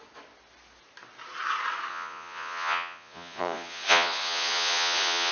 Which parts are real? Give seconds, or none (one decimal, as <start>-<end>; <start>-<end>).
0.0-1.9